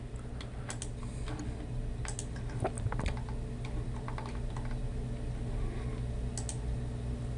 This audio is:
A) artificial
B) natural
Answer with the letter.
B